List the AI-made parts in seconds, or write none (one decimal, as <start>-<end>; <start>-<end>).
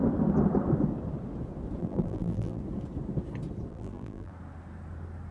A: 1.8-2.6; 3.7-4.3